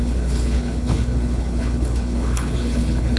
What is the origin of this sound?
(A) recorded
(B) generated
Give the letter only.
B